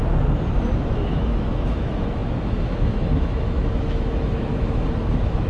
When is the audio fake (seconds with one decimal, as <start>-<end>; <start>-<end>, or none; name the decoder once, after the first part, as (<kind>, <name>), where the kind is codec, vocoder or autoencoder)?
0.8-5.5 (autoencoder, DAC-VAE)